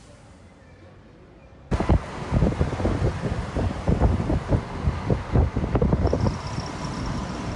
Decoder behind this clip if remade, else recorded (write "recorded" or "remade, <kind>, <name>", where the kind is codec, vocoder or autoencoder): recorded